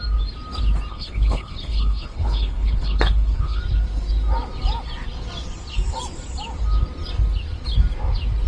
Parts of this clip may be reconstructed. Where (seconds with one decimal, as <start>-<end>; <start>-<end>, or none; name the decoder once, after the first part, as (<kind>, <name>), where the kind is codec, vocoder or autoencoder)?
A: 0.9-3.6 (codec, HILCodec)